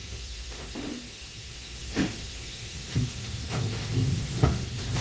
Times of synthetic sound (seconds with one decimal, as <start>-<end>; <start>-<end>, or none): 0.0-5.0